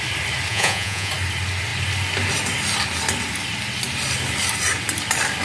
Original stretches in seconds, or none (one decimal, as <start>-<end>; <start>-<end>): 0.0-0.5; 1.1-5.4